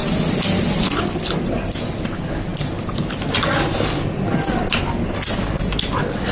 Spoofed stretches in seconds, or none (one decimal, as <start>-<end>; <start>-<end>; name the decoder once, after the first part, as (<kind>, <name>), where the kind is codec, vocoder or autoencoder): 0.0-1.9 (vocoder, BigVGAN v2)